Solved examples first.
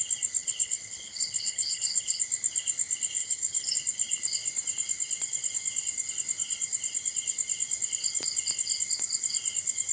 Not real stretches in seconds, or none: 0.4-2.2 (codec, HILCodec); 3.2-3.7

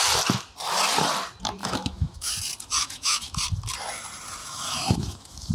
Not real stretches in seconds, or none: 1.6-2.3 (autoencoder, DAC-VAE); 2.8-3.4; 4.4-5.5

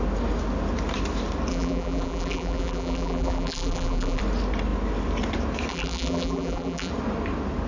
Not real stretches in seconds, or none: 1.5-4.2 (vocoder, BigVGAN v2); 5.7-6.9

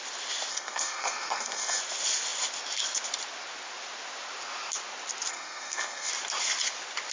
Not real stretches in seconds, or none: 0.5-1.8 (codec, SNAC); 5.3-6.1

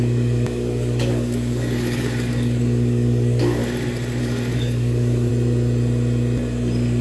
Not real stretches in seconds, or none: 0.0-3.6 (codec, DAC); 4.2-5.3